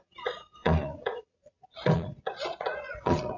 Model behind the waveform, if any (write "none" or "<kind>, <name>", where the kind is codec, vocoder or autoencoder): vocoder, Vocos